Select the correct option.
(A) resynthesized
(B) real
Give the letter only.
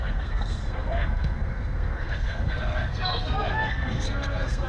A